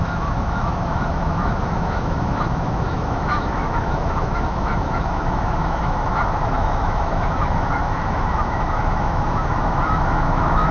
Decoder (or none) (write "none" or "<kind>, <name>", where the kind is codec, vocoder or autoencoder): autoencoder, DAC-VAE